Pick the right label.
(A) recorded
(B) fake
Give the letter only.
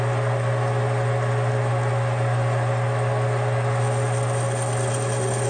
A